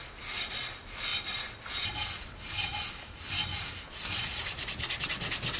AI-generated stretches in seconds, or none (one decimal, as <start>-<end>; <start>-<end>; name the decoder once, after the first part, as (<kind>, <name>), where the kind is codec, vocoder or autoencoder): 3.5-5.0 (vocoder, BigVGAN v2)

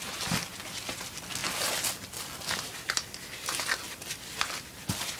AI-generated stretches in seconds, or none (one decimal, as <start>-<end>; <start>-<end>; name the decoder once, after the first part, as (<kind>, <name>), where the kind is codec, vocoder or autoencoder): none

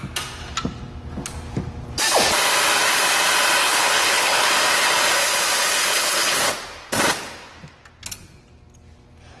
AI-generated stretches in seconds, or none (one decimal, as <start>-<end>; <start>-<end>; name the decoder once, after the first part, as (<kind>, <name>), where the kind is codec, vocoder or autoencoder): 3.6-4.5 (codec, HILCodec); 5.8-6.4

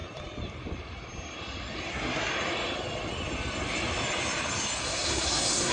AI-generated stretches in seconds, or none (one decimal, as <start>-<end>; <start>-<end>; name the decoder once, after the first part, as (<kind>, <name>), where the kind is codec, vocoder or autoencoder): 1.9-2.3 (codec, SNAC); 4.8-5.7

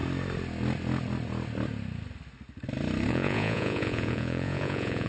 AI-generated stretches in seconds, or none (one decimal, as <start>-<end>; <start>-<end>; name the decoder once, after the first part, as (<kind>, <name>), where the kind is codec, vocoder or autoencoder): 3.1-5.1 (vocoder, Vocos)

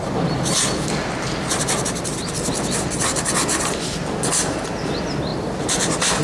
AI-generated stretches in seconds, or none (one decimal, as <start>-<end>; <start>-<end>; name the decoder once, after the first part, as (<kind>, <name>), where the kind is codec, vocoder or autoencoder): none

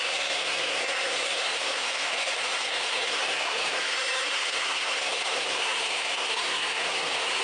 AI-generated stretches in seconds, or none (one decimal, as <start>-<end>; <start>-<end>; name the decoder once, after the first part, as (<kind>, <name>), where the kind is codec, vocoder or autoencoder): 0.0-7.4 (codec, SNAC)